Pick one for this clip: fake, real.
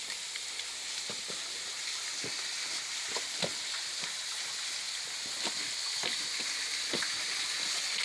real